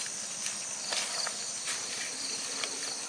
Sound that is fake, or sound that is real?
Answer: real